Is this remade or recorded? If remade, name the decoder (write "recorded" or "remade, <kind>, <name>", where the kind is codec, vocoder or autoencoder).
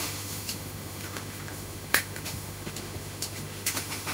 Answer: remade, autoencoder, DAC-VAE